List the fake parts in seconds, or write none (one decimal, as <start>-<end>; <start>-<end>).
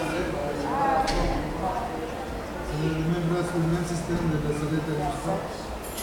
none